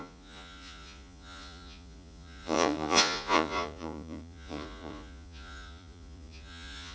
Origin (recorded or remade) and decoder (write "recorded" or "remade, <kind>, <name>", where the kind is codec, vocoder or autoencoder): remade, vocoder, Vocos